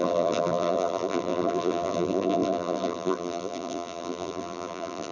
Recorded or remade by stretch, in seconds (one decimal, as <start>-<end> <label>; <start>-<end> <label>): 0.0-5.1 remade